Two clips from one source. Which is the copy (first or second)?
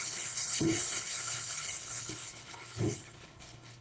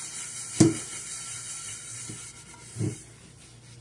first